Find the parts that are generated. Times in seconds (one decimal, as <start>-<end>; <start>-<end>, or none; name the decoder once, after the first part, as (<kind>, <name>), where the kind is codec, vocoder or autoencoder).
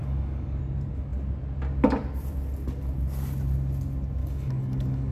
0.0-0.6 (codec, DAC); 4.2-5.1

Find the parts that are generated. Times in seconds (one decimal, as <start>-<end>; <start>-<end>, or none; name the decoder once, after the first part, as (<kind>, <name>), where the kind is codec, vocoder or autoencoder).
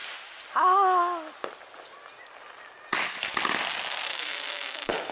4.1-5.1 (autoencoder, DAC-VAE)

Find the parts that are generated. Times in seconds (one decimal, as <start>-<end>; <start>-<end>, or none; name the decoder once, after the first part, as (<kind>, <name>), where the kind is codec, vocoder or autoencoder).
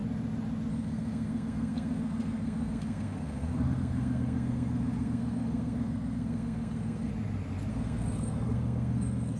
0.7-7.1 (codec, SNAC); 7.7-9.4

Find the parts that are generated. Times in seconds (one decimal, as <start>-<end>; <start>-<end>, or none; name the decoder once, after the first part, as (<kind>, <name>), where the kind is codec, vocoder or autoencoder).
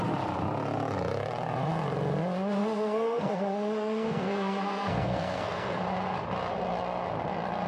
2.6-5.8 (codec, SNAC)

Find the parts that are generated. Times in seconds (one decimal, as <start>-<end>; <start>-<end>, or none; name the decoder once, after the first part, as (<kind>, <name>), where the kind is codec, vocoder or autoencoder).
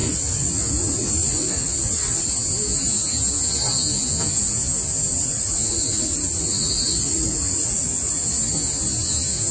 0.0-2.3 (vocoder, Vocos); 5.1-8.1